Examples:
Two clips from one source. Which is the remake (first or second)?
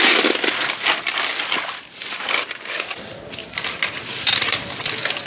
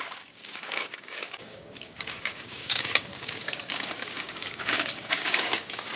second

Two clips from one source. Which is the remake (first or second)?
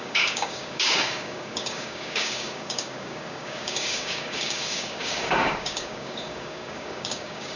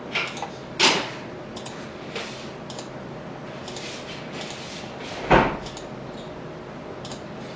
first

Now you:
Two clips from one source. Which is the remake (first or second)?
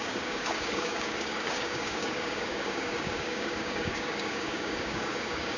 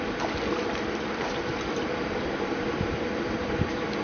first